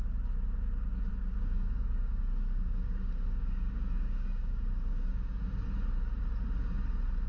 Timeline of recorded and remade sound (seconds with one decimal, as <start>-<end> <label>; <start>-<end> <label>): 0.0-1.1 recorded; 1.1-5.5 remade; 5.5-7.3 recorded